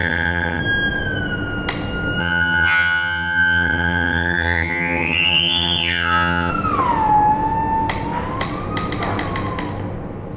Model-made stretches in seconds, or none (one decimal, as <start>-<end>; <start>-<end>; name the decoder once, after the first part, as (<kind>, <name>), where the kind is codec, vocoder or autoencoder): 0.0-0.6 (vocoder, HiFi-GAN); 2.2-6.5